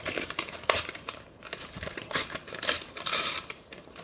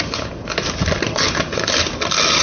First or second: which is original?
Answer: second